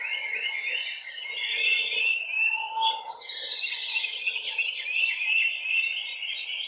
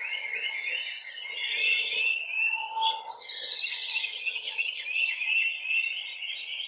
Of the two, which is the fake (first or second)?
first